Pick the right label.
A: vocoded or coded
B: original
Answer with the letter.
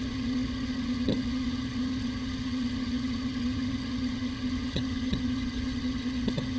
A